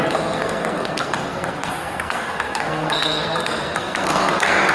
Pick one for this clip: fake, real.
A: fake